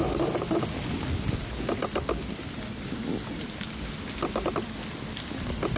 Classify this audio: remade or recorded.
recorded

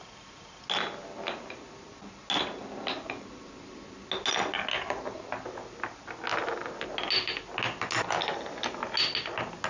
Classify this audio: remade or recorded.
recorded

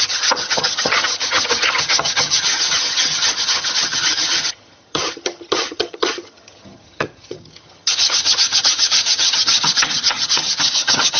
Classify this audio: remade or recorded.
remade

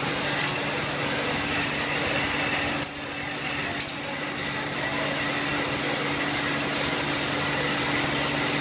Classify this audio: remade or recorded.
recorded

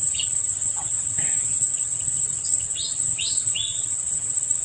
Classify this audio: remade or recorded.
remade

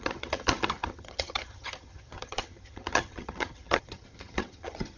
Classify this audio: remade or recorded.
remade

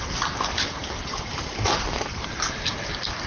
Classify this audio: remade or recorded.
recorded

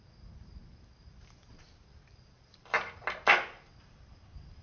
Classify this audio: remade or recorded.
recorded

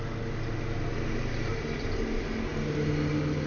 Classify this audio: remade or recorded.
recorded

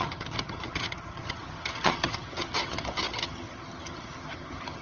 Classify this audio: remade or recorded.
remade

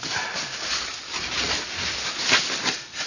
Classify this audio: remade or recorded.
recorded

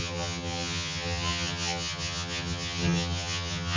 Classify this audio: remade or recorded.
remade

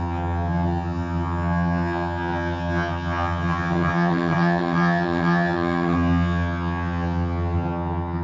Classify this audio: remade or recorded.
remade